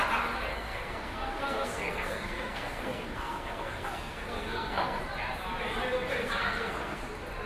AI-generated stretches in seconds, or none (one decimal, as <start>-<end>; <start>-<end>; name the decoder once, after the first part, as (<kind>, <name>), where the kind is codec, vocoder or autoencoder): 0.5-5.0 (codec, SNAC); 6.2-7.0